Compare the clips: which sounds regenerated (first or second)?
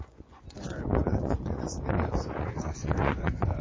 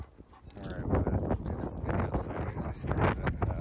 first